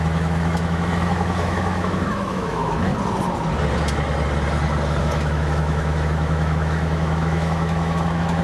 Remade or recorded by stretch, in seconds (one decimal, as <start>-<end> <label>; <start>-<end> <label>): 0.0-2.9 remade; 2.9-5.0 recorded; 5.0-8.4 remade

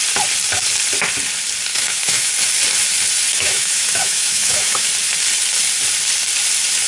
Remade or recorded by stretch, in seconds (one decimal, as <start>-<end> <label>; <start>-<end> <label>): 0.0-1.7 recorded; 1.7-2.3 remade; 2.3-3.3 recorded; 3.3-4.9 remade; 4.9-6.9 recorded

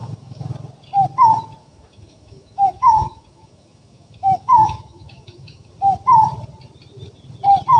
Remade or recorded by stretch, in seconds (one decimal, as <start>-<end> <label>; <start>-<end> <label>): 0.0-0.5 remade; 0.5-1.6 recorded; 1.6-5.7 remade; 5.7-7.8 recorded

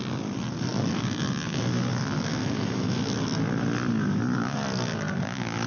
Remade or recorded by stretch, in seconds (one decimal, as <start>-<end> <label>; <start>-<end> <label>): 0.0-2.4 recorded; 2.4-3.0 remade; 3.0-5.7 recorded